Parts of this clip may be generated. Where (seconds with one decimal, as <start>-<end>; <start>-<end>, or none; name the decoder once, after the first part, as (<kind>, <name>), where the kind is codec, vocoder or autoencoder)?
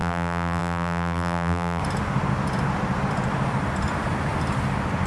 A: 0.0-1.8 (vocoder, BigVGAN v2)